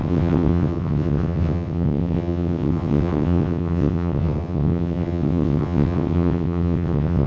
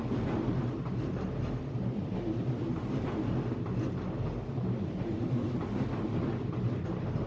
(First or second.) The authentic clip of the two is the second